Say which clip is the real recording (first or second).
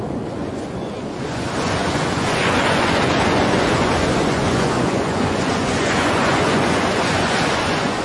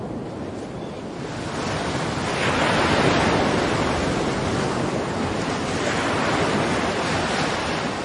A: second